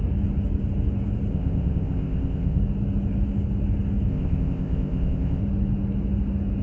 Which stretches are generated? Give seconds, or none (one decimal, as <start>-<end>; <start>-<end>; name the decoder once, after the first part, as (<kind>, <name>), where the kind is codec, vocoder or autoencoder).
1.3-2.6 (codec, ZipCodec); 4.1-5.4